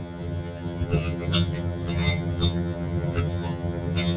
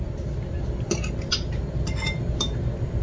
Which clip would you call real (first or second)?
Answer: second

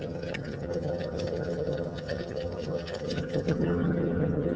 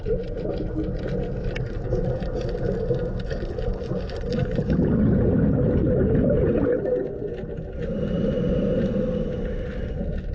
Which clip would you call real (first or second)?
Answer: second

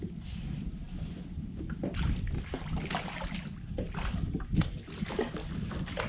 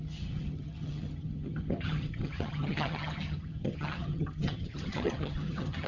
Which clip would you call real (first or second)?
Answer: first